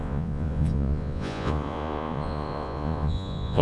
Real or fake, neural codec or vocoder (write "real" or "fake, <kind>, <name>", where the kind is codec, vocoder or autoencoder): fake, vocoder, Vocos